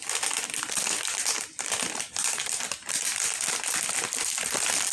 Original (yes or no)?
yes